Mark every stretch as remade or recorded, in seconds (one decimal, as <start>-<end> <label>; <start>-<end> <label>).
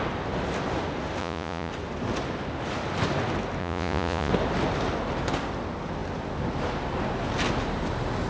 0.0-1.2 recorded; 1.2-1.7 remade; 1.7-3.6 recorded; 3.6-4.3 remade; 4.3-8.3 recorded